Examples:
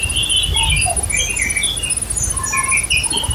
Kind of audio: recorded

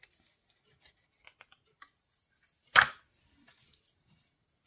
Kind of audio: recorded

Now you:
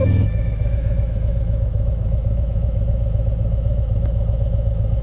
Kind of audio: remade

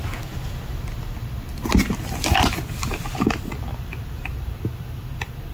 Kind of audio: recorded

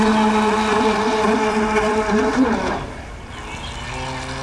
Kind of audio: recorded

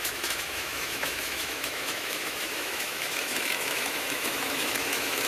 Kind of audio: remade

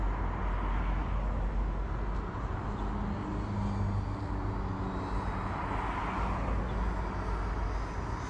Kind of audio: recorded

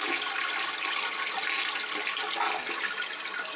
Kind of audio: recorded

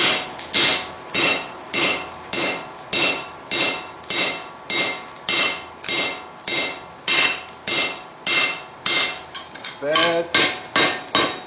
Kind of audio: recorded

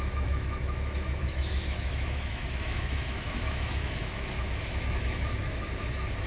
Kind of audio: remade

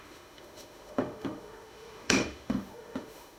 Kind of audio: remade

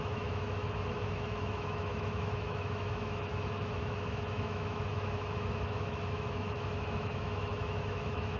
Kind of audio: remade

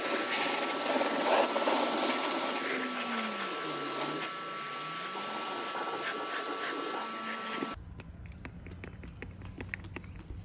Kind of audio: recorded